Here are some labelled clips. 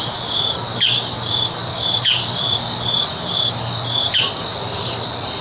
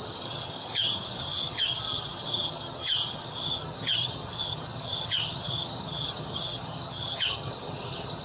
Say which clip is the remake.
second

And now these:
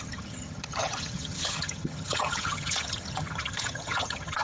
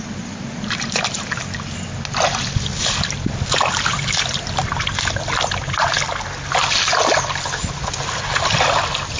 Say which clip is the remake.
first